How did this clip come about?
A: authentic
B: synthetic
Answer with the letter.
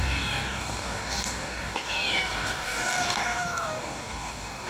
B